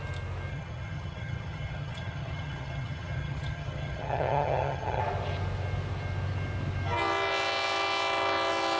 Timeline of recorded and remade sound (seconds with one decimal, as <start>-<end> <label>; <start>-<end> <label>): 0.0-0.5 recorded; 0.5-5.0 remade; 5.0-8.8 recorded